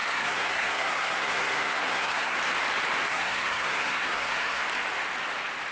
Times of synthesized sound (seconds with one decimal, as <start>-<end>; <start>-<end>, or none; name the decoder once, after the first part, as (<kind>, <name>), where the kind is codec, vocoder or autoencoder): 0.0-2.4 (codec, SNAC); 3.1-4.6